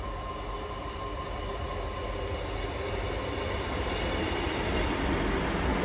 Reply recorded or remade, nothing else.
recorded